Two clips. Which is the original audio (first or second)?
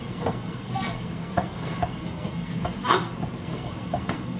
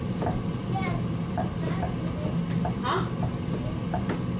second